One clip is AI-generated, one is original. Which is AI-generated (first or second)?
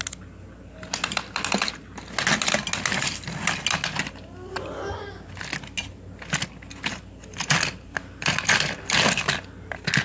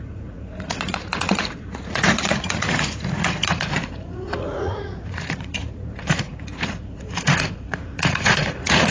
second